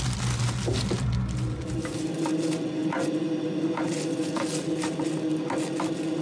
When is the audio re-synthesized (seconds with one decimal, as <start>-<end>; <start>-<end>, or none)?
none